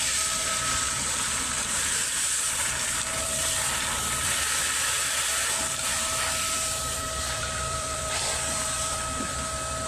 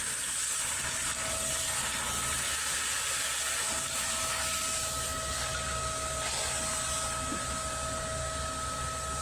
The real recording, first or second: second